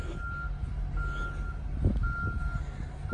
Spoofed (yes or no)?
no